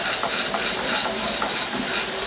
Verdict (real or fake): real